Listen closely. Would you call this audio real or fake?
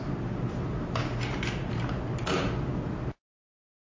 real